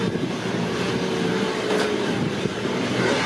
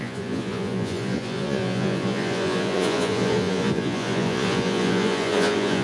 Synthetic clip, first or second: second